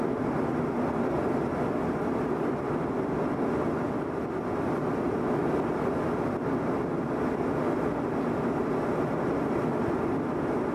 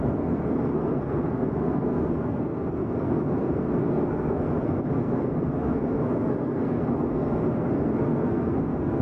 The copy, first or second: second